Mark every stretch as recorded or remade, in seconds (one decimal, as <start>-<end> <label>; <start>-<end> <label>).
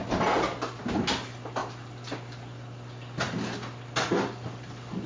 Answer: 0.0-5.1 recorded